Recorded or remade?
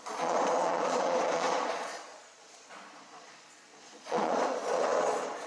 remade